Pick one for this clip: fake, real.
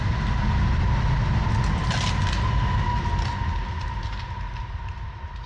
real